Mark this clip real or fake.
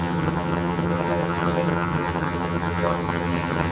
fake